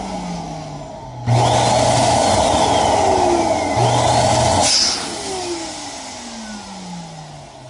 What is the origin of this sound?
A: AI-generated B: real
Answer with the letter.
B